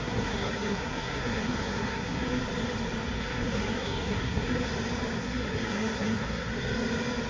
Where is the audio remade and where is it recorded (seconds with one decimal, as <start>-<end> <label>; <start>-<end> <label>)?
0.0-2.4 remade; 2.4-3.2 recorded; 3.2-4.7 remade; 4.7-5.2 recorded; 5.2-6.5 remade; 6.5-7.3 recorded